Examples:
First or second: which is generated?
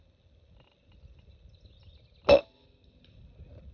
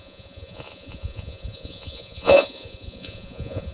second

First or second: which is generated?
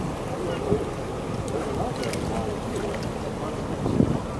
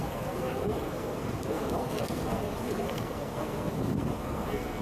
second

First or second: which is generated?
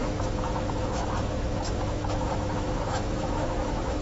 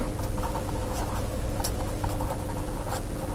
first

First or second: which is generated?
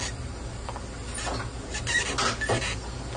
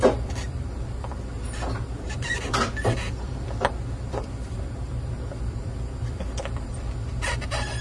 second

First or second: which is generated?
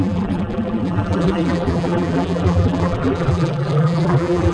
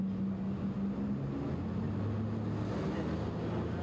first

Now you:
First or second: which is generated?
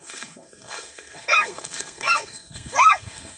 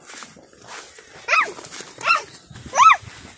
first